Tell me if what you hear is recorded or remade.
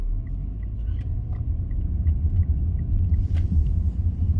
recorded